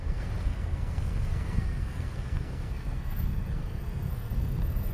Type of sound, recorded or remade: remade